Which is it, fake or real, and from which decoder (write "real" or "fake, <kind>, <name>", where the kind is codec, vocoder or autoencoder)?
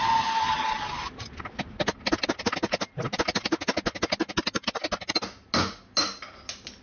real